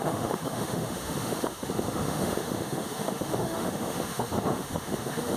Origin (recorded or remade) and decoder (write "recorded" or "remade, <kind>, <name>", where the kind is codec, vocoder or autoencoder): remade, autoencoder, DAC-VAE